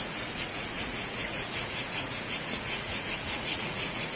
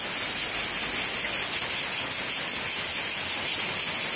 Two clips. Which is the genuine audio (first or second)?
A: second